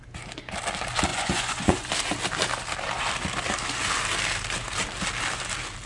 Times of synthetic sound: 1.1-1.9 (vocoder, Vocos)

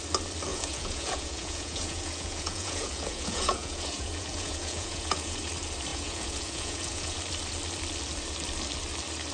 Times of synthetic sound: 0.5-5.5 (vocoder, Vocos); 5.9-7.2

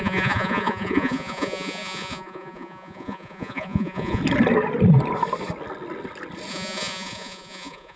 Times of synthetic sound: 0.0-4.2 (vocoder, Vocos); 6.5-8.0

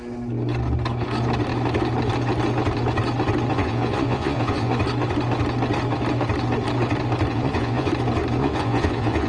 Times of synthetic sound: 3.5-4.8 (vocoder, Vocos); 7.3-7.9; 8.4-9.3

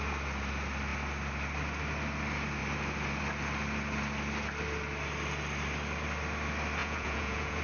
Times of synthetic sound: 6.8-7.6 (vocoder, Vocos)